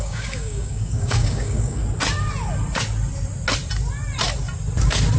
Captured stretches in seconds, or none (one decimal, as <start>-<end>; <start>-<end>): 1.8-5.2